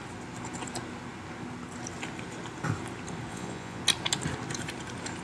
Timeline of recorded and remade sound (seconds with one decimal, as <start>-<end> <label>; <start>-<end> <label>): 0.0-3.3 recorded; 3.3-3.8 remade; 3.8-5.2 recorded